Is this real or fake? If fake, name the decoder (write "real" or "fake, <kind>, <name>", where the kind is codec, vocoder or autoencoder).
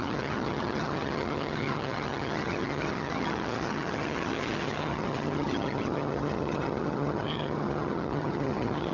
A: fake, vocoder, HiFi-GAN